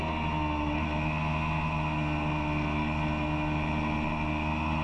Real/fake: real